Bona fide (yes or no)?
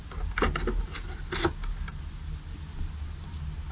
yes